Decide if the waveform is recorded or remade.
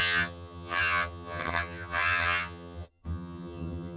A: remade